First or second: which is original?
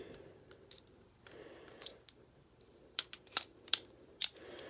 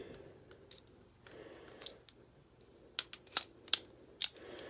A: second